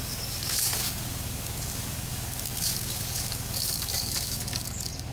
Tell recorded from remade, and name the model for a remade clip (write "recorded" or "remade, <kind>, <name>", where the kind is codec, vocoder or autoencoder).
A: remade, codec, DAC